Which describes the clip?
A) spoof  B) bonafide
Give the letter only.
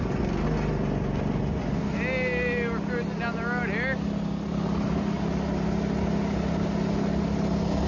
B